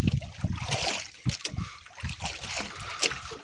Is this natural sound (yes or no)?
yes